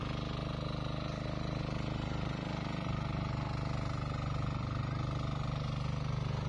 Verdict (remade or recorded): recorded